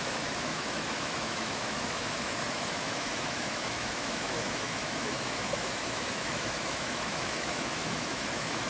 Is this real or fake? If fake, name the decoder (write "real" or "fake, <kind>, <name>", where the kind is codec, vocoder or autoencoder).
fake, autoencoder, DAC-VAE